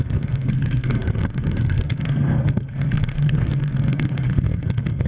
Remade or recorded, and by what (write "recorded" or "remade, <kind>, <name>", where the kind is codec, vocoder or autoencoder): remade, codec, SNAC